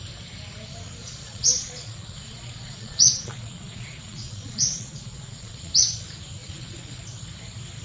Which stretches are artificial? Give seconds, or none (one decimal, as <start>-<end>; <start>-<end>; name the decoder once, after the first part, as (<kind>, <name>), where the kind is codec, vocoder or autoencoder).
1.0-5.7 (vocoder, Vocos); 6.4-7.0